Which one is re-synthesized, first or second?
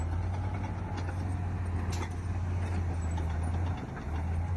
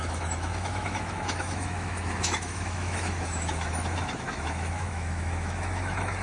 second